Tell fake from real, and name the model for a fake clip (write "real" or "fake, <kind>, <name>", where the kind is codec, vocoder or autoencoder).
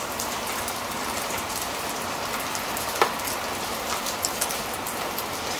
fake, vocoder, BigVGAN v2